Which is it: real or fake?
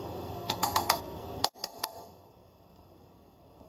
fake